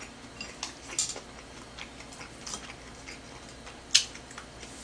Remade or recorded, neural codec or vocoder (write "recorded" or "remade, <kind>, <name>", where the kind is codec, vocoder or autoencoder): recorded